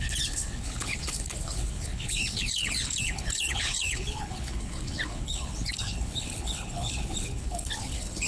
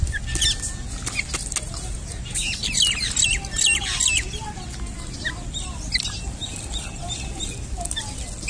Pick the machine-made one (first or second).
first